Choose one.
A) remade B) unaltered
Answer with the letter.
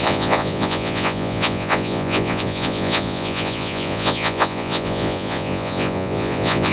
A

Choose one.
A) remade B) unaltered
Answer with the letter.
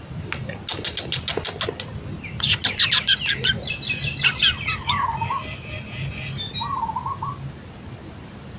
B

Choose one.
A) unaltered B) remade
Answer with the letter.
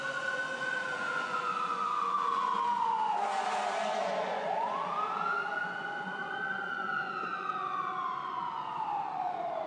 B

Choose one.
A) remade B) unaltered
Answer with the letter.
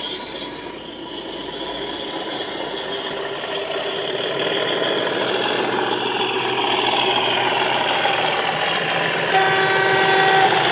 B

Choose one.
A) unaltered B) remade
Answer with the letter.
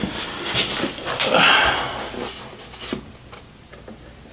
A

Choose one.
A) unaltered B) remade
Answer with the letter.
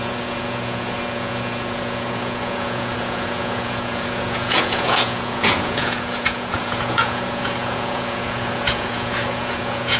B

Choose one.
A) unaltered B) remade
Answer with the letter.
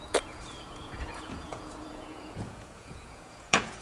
B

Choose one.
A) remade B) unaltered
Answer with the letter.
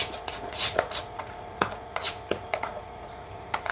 A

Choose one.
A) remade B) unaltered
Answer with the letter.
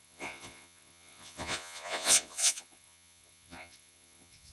A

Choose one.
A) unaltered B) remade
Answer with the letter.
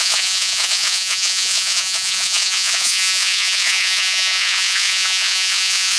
B